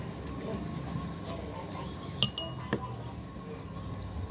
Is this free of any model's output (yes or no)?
yes